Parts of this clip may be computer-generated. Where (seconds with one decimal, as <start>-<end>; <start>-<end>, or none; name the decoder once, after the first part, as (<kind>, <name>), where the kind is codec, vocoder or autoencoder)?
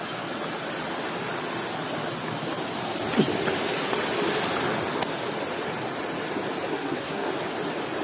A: 6.7-7.3 (codec, SNAC)